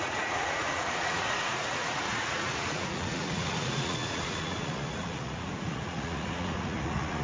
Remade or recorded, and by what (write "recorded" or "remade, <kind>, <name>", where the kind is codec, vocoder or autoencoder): remade, vocoder, Vocos